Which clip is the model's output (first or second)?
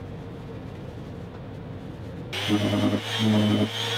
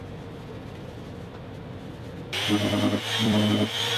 second